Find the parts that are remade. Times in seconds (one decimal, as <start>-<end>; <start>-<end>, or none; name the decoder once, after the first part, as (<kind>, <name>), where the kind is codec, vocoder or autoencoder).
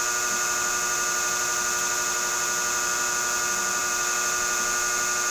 none